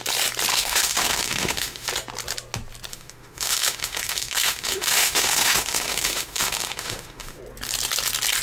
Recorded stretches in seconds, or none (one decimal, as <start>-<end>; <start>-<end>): 0.0-0.5; 1.9-2.9; 7.4-8.4

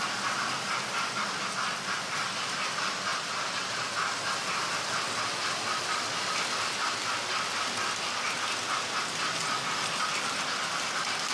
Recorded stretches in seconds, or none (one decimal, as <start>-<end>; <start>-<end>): 0.0-11.3